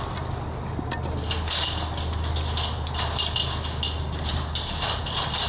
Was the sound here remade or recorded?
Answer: recorded